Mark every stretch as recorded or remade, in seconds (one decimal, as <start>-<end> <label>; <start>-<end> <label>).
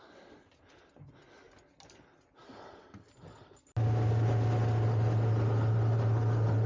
0.0-6.7 recorded